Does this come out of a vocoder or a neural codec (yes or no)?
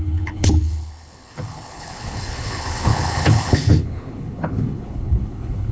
yes